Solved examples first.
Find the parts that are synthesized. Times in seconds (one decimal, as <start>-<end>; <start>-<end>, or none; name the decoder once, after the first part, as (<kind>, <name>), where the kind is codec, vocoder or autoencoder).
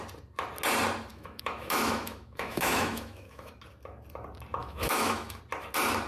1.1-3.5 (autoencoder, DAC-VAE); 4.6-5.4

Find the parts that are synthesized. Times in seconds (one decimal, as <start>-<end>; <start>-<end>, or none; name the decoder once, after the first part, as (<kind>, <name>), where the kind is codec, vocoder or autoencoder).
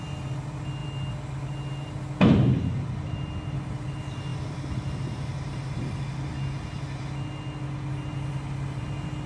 none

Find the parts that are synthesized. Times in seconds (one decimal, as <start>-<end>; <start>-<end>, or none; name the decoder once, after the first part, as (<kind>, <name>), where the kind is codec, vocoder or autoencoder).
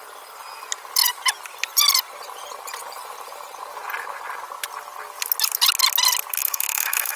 6.4-7.2 (autoencoder, DAC-VAE)